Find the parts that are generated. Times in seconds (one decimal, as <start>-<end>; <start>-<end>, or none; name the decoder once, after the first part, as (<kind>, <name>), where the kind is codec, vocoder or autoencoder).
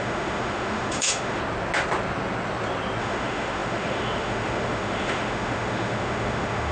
0.0-1.4 (autoencoder, DAC-VAE); 3.0-6.7